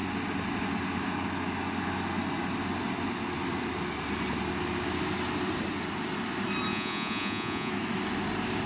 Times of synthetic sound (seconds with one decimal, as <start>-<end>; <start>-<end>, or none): 6.7-7.7